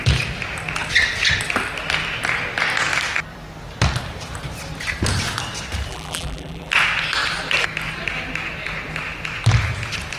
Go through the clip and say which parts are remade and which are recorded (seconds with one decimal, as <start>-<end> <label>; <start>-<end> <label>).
0.0-5.9 recorded; 5.9-6.7 remade; 6.7-10.2 recorded